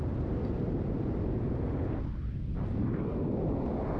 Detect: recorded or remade recorded